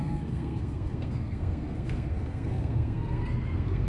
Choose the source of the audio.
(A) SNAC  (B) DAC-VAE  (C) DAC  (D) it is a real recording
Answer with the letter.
A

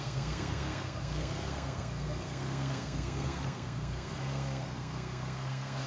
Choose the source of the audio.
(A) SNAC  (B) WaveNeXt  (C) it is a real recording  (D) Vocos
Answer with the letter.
A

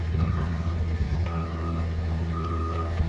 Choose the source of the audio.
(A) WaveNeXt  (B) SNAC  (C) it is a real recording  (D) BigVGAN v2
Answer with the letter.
B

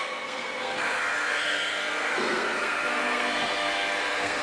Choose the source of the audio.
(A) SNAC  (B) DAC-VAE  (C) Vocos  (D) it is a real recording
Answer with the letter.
A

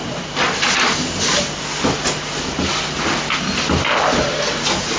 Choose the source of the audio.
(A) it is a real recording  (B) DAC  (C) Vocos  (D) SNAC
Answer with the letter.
A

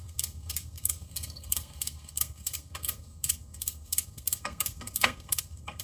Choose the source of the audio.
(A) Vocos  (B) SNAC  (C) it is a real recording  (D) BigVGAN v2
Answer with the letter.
B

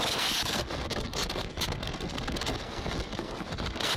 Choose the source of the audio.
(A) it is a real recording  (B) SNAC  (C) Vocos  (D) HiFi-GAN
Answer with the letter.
B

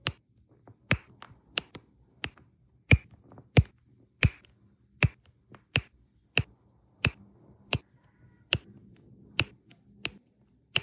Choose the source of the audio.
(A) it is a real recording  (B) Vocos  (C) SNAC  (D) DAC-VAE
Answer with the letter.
A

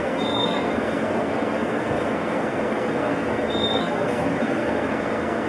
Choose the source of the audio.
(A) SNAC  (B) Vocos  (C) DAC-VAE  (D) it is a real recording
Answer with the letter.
A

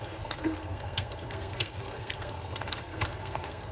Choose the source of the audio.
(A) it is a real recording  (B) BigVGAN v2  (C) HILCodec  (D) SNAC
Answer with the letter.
D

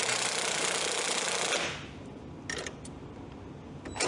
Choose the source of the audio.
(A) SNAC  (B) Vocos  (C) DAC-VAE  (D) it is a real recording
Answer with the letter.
D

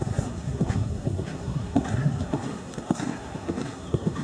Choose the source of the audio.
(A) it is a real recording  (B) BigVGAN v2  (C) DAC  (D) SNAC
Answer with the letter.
D